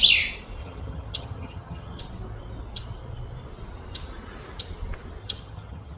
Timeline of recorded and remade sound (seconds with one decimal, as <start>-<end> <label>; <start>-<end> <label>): 0.0-0.6 recorded; 0.6-2.0 remade; 2.0-5.2 recorded; 5.2-6.0 remade